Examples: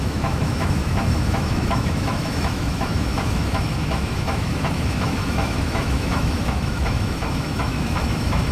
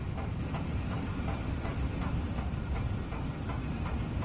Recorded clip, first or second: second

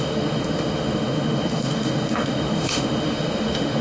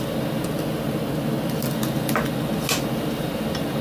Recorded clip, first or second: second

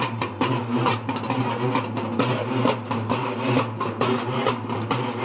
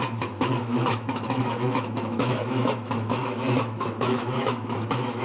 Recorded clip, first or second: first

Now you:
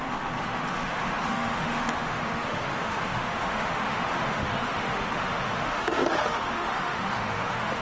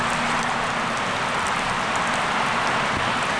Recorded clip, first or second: second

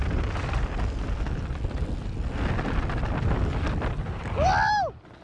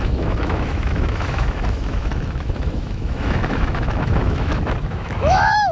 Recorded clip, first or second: first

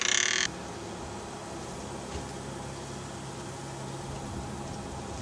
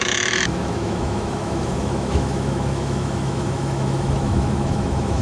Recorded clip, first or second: first